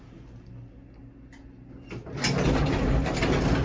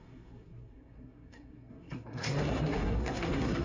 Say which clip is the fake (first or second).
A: second